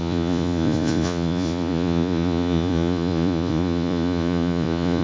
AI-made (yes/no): yes